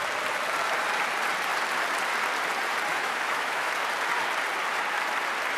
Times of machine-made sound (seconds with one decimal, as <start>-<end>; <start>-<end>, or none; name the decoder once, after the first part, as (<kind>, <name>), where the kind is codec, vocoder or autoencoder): 2.9-3.7 (autoencoder, DAC-VAE)